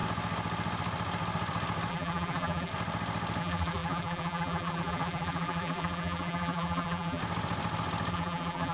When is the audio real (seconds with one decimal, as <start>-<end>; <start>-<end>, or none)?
0.0-1.9; 2.7-3.4; 7.2-8.1